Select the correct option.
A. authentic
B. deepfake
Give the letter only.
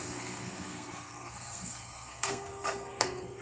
B